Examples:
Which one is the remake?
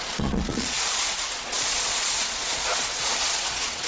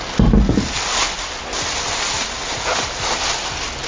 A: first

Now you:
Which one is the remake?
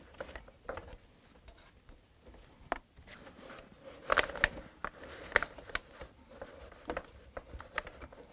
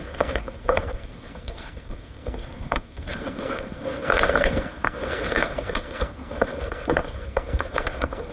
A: second